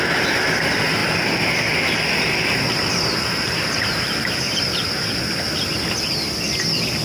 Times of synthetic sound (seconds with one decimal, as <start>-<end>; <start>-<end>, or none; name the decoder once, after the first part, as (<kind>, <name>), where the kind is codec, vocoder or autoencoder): 1.0-5.2 (vocoder, BigVGAN v2)